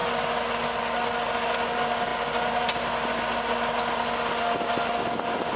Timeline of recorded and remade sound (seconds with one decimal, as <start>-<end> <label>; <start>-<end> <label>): 0.0-5.6 recorded